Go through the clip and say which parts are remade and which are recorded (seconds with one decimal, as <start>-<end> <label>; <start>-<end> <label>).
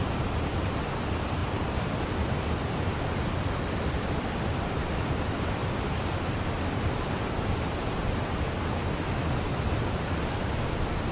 0.0-11.1 recorded